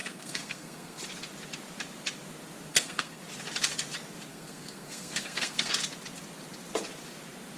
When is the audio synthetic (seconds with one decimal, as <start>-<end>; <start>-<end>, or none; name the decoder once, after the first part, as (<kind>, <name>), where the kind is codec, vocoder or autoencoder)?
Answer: 0.0-1.0 (codec, SNAC); 2.7-3.2; 4.3-5.7